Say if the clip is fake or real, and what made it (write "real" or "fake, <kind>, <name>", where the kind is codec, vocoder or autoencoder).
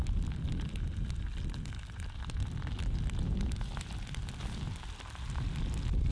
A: real